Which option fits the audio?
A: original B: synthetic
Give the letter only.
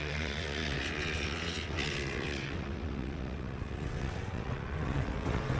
B